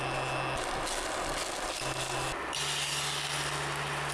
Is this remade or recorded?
recorded